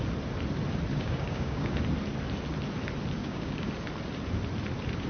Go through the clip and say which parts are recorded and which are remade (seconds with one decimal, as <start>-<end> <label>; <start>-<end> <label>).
0.0-0.9 recorded; 0.9-1.8 remade; 1.8-3.2 recorded; 3.2-3.7 remade; 3.7-5.1 recorded